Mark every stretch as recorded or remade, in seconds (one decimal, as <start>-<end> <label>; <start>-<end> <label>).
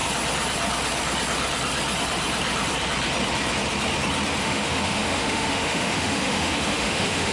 0.0-4.4 recorded; 4.4-7.3 remade